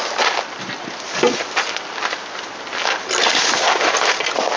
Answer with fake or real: real